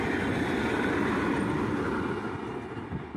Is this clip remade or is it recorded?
recorded